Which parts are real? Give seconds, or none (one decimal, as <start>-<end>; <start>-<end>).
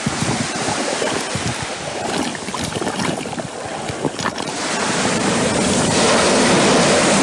0.0-2.3; 3.4-7.2